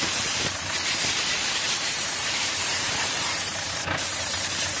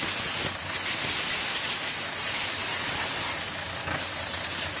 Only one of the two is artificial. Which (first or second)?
first